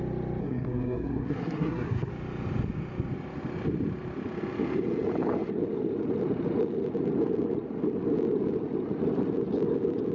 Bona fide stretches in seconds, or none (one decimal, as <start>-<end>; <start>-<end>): 0.0-0.4; 2.1-10.1